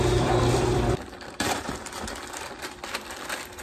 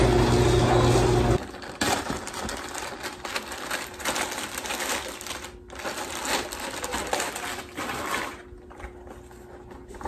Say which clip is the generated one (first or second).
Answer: first